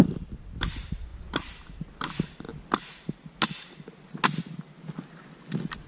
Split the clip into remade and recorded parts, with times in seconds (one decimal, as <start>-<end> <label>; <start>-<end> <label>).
0.0-5.9 recorded